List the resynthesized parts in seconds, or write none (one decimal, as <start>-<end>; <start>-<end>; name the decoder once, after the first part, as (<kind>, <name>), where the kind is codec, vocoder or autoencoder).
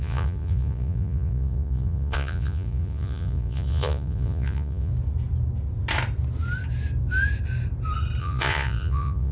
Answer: 0.0-4.9 (vocoder, Vocos); 8.2-9.3